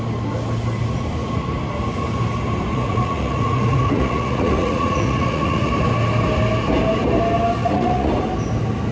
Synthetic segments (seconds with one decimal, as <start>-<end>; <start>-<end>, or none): 2.7-5.7; 7.6-8.1